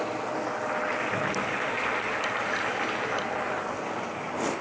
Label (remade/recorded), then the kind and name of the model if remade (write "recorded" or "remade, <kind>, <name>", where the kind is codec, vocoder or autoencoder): recorded